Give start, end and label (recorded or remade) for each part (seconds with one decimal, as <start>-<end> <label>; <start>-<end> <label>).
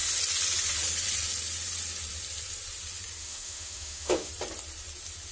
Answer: 0.0-3.2 recorded; 3.2-4.3 remade; 4.3-5.3 recorded